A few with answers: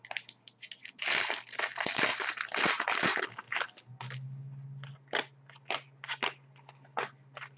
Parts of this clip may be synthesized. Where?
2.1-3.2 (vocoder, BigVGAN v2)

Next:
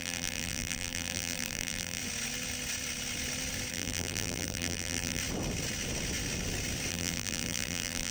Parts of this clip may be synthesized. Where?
0.0-2.0 (vocoder, BigVGAN v2); 3.7-5.2; 6.9-8.1